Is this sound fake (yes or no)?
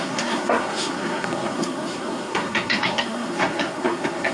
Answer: yes